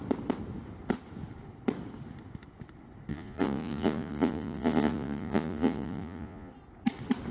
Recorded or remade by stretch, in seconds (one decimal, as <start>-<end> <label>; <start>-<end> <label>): 0.0-3.1 recorded; 3.1-6.5 remade; 6.5-7.3 recorded